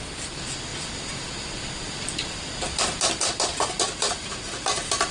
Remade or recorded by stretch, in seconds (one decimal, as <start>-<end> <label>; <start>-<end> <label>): 0.0-5.1 recorded